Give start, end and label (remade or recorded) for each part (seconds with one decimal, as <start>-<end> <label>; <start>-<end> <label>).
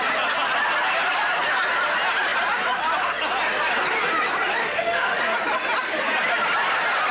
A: 0.0-4.6 recorded; 4.6-5.2 remade; 5.2-7.1 recorded